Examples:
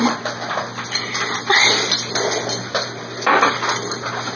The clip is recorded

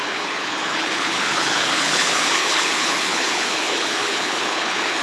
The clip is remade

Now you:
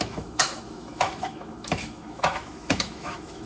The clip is remade